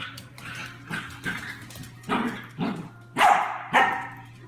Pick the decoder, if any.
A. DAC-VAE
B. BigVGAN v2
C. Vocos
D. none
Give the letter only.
B